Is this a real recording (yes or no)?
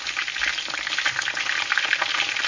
yes